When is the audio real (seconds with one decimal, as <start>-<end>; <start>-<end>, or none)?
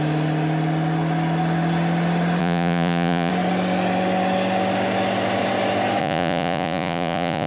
0.0-2.4; 3.3-6.0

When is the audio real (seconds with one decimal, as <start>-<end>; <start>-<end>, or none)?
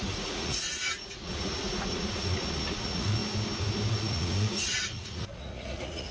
3.2-3.9